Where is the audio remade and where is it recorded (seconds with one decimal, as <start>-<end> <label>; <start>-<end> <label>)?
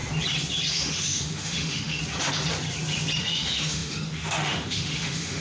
0.0-0.7 recorded; 0.7-2.0 remade; 2.0-3.2 recorded; 3.2-5.4 remade